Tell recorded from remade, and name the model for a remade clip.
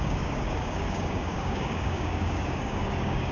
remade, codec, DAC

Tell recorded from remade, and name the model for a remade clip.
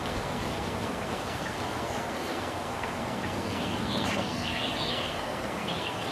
remade, codec, SNAC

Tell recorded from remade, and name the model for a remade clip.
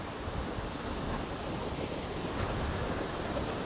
remade, vocoder, BigVGAN v2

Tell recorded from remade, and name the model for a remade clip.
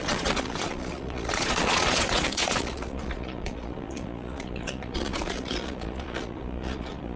remade, vocoder, Vocos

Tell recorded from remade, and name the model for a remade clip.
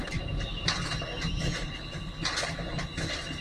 remade, vocoder, BigVGAN v2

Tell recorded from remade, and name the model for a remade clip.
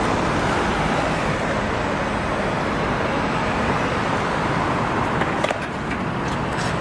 recorded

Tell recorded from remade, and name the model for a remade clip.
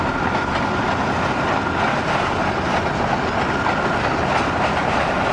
recorded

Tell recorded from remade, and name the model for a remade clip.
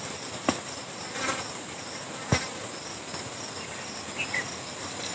recorded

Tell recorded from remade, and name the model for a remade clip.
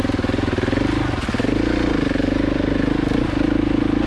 recorded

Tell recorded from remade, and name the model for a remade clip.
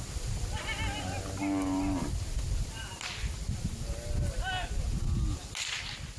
recorded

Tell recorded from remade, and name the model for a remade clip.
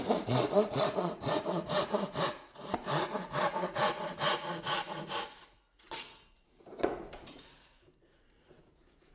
remade, vocoder, Vocos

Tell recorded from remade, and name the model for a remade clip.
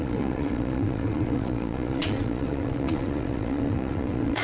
remade, vocoder, Vocos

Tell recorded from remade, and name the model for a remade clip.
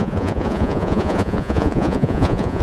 remade, vocoder, Vocos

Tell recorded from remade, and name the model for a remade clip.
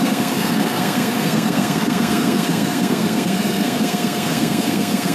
remade, codec, SNAC